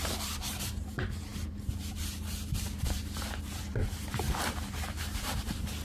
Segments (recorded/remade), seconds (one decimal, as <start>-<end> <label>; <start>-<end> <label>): 0.0-5.8 remade